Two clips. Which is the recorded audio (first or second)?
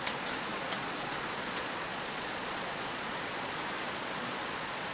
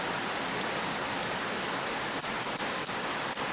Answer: second